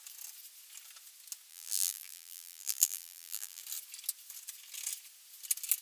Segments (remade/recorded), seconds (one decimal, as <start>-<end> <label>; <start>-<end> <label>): 0.0-1.5 recorded; 1.5-3.6 remade; 3.6-5.8 recorded